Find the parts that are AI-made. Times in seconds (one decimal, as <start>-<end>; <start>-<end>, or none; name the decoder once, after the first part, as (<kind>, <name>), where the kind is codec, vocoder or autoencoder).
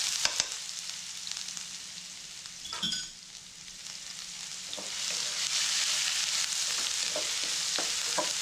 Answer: none